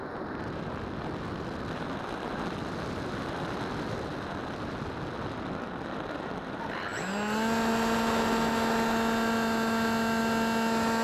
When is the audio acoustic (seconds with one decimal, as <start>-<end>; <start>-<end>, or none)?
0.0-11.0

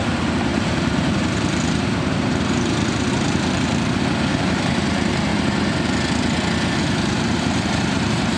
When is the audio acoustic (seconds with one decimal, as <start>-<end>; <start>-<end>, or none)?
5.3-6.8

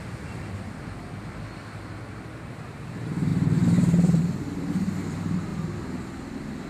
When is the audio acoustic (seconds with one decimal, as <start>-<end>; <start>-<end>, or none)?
0.0-3.3; 4.2-6.7

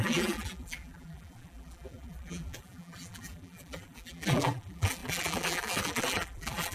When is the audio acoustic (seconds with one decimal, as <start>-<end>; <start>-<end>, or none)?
none

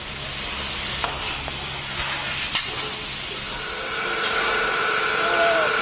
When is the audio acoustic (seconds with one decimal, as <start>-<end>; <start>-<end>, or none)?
0.0-4.8

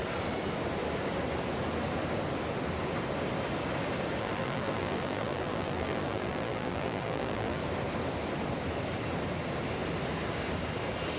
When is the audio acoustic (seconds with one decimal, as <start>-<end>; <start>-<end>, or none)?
0.0-4.2; 7.6-11.2

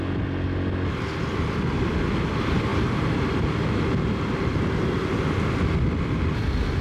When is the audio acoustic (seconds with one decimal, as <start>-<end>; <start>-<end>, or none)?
0.0-6.8